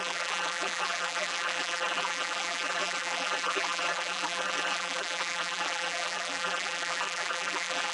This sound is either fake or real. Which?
fake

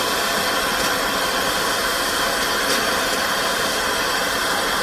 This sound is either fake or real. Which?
real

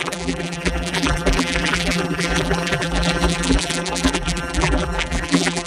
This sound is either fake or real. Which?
fake